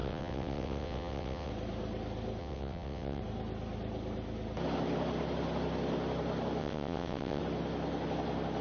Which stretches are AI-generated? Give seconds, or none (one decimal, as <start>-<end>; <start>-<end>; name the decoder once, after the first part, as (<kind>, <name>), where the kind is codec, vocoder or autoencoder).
0.0-1.5 (vocoder, WaveNeXt); 2.4-3.2; 6.6-7.4